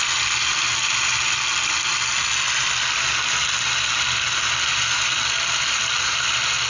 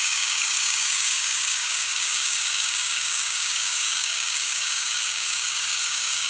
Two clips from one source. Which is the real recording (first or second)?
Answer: first